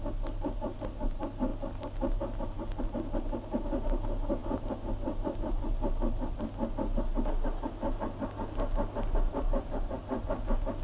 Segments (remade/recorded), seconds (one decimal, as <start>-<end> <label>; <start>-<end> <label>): 0.0-10.8 recorded